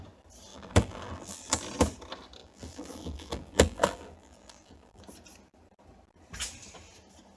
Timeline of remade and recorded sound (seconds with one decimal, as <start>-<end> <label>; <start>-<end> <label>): 0.0-0.5 recorded; 0.5-1.6 remade; 1.6-2.4 recorded; 2.4-5.0 remade; 5.0-7.4 recorded